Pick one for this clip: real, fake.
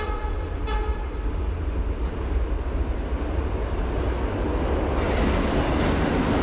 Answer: real